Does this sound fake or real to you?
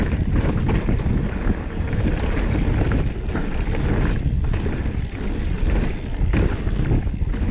real